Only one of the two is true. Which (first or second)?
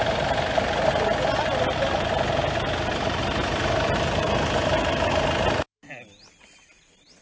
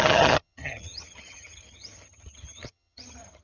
first